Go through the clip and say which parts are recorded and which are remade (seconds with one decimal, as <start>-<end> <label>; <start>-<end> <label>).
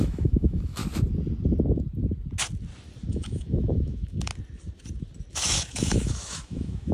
0.0-0.8 remade; 0.8-3.1 recorded; 3.1-4.3 remade; 4.3-5.3 recorded; 5.3-6.9 remade